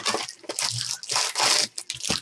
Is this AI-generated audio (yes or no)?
no